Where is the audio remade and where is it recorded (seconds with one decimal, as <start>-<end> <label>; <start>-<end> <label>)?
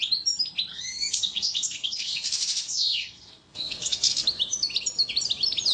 0.0-0.7 recorded; 0.7-4.1 remade; 4.1-5.7 recorded